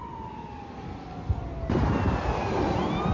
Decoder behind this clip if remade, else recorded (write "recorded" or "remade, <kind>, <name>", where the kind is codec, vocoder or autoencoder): recorded